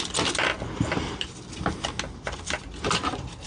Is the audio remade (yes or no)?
no